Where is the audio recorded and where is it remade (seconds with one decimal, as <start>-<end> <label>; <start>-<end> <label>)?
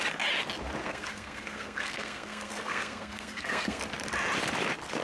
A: 0.0-0.8 recorded; 0.8-3.8 remade; 3.8-5.0 recorded